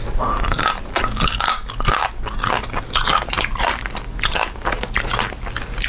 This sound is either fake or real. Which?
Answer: real